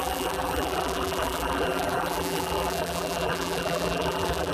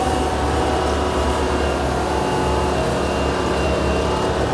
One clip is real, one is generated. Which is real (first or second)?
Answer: second